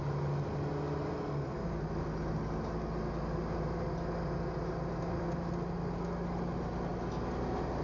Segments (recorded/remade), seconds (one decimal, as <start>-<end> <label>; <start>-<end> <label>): 0.0-7.8 recorded